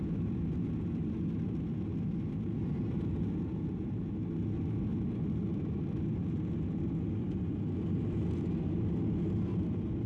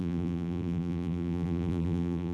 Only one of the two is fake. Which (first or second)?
second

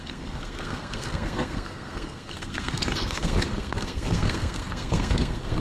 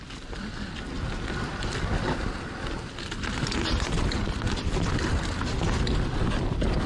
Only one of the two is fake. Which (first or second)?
first